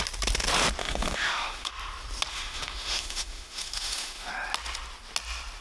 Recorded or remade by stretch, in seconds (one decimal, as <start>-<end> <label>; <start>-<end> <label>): 0.0-0.8 recorded; 0.8-1.7 remade; 1.7-2.3 recorded; 2.3-4.3 remade; 4.3-5.6 recorded